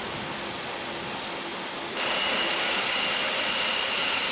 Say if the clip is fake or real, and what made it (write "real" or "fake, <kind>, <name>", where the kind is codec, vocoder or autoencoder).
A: real